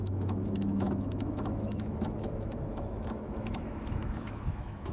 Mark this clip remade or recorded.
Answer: remade